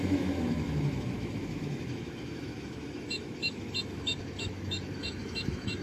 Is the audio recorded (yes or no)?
no